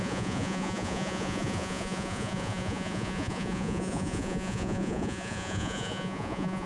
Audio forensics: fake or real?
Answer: fake